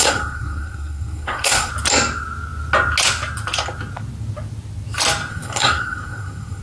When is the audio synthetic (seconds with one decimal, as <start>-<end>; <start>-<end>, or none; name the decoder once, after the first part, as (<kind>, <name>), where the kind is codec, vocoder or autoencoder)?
0.0-1.7 (codec, SNAC); 5.3-6.6

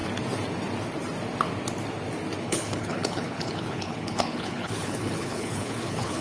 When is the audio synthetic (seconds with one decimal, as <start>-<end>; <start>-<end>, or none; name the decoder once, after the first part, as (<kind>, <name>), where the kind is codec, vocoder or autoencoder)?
2.4-6.2 (codec, HILCodec)

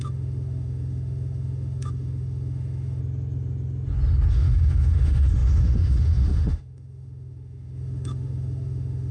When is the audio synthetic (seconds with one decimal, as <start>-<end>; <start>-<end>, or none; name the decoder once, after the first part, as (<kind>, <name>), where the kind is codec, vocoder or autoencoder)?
0.0-3.0 (autoencoder, DAC-VAE); 4.3-9.1

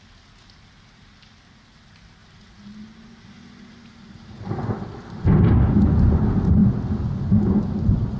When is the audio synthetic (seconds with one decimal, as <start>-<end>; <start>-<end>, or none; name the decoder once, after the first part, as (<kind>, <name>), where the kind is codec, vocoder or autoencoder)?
none